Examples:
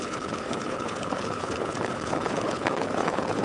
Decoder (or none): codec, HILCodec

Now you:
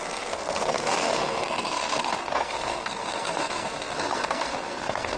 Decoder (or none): codec, SNAC